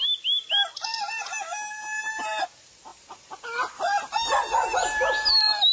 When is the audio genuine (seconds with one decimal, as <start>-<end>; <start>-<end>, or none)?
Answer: 0.0-5.7